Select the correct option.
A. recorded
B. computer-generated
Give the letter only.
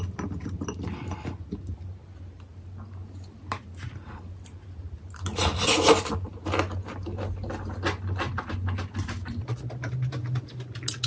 A